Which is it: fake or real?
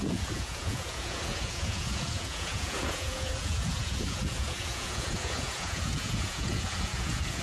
fake